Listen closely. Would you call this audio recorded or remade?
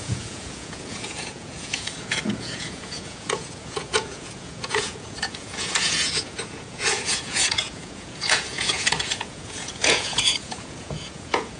remade